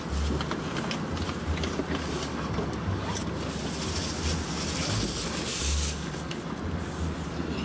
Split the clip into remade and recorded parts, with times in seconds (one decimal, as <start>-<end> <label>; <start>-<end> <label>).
0.0-2.3 recorded; 2.3-3.0 remade; 3.0-5.5 recorded; 5.5-6.4 remade; 6.4-7.6 recorded